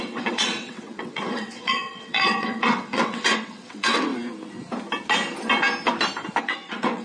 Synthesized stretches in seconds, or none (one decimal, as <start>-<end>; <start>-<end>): 0.0-4.1; 6.4-7.0